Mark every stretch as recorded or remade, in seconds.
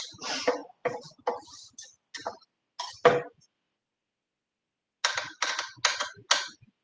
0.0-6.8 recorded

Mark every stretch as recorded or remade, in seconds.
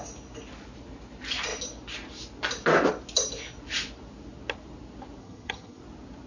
0.0-5.2 recorded; 5.2-5.8 remade; 5.8-6.3 recorded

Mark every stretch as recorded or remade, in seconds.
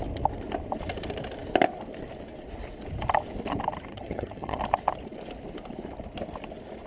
0.0-3.9 recorded; 3.9-4.6 remade; 4.6-6.9 recorded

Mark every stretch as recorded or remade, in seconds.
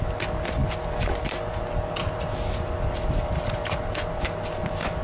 0.0-5.0 recorded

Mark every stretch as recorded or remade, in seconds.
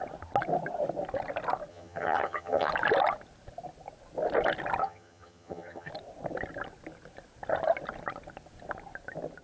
0.0-1.7 recorded; 1.7-2.7 remade; 2.7-4.8 recorded; 4.8-5.9 remade; 5.9-9.4 recorded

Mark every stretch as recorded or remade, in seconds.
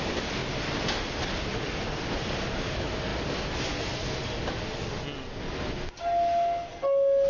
0.0-7.3 recorded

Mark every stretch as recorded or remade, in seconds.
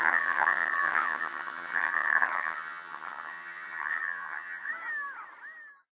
0.0-4.7 remade; 4.7-6.0 recorded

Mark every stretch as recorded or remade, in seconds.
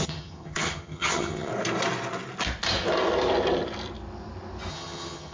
0.0-1.5 remade; 1.5-4.7 recorded; 4.7-5.3 remade